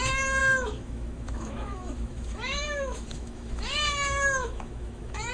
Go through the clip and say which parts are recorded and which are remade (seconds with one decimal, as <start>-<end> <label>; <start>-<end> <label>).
0.0-0.4 recorded; 0.4-3.6 remade; 3.6-4.4 recorded; 4.4-5.3 remade